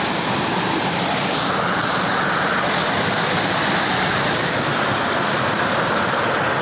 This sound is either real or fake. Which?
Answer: real